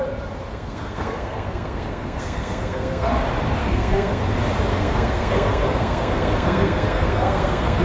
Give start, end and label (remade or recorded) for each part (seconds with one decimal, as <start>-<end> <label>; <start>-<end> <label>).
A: 0.0-0.5 recorded; 0.5-3.1 remade; 3.1-3.6 recorded; 3.6-4.2 remade; 4.2-4.7 recorded; 4.7-7.8 remade